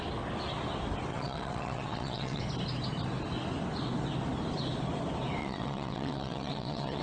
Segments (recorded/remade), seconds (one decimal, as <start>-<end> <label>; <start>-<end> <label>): 0.0-1.1 recorded; 1.1-2.4 remade; 2.4-5.4 recorded; 5.4-7.0 remade